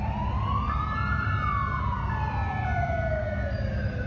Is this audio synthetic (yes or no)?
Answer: no